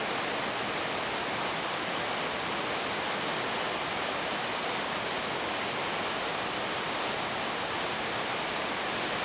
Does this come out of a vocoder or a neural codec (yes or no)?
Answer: no